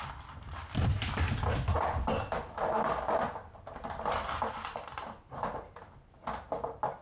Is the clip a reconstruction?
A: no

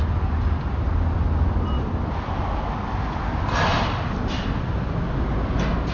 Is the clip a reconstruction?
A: no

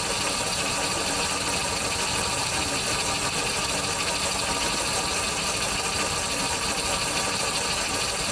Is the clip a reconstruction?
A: no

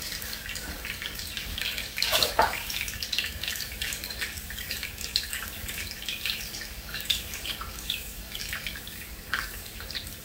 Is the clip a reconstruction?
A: yes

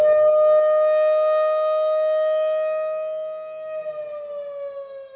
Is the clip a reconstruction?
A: no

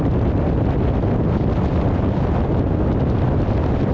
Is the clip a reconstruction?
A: no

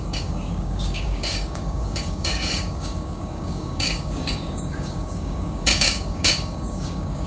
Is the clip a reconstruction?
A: yes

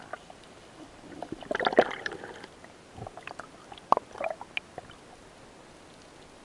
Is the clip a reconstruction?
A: no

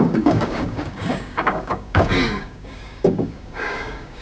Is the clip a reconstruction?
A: yes